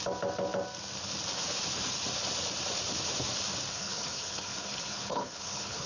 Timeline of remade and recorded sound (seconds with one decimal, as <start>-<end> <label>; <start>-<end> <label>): 0.0-3.7 recorded; 3.7-5.9 remade

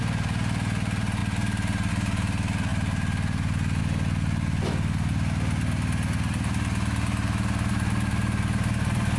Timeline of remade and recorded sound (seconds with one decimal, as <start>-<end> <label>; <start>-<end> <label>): 0.0-9.2 recorded